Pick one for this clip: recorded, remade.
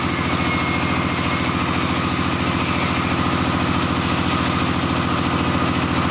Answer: recorded